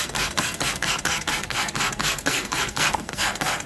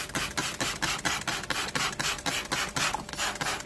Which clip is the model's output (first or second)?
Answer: first